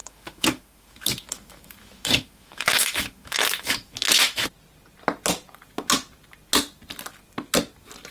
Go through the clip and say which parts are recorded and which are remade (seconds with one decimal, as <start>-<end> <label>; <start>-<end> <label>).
0.0-4.5 remade; 4.5-8.1 recorded